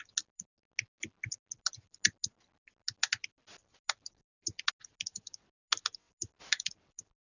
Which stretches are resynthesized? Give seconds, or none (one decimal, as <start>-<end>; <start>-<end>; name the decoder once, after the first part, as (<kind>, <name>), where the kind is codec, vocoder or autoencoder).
none